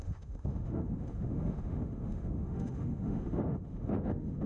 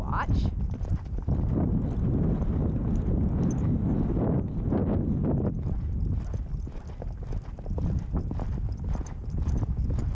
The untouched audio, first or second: second